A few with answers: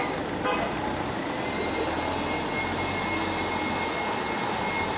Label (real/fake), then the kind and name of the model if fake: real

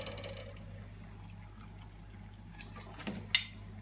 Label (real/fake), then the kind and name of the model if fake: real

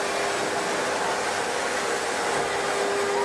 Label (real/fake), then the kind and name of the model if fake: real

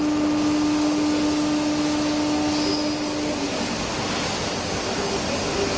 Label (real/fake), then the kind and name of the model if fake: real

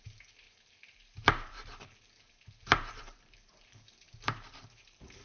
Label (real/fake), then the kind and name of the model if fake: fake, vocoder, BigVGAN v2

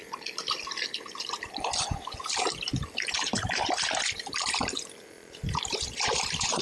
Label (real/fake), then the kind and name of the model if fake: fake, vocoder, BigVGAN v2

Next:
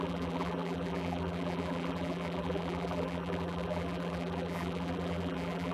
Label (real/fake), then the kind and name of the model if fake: fake, vocoder, BigVGAN v2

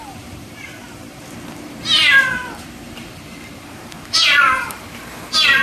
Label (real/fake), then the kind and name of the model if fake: fake, vocoder, BigVGAN v2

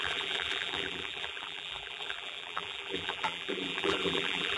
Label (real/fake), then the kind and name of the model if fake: fake, vocoder, BigVGAN v2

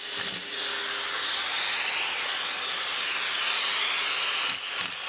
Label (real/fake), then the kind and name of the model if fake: real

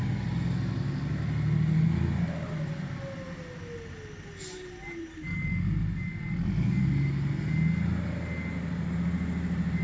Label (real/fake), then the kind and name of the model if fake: real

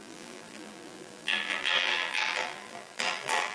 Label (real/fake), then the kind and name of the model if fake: fake, vocoder, BigVGAN v2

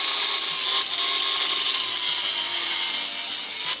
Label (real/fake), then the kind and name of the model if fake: real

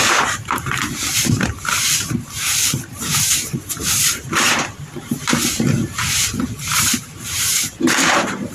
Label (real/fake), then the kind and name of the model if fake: fake, vocoder, BigVGAN v2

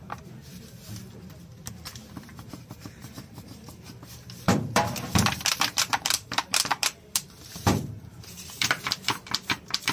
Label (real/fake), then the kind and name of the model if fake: fake, vocoder, BigVGAN v2